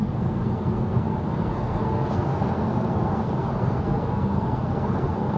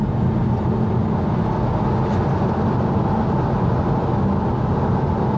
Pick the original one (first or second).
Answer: second